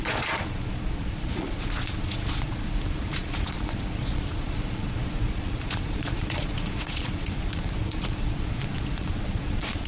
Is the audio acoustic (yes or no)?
no